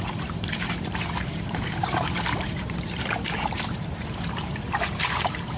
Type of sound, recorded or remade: remade